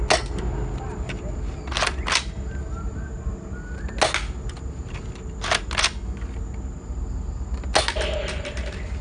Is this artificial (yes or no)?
no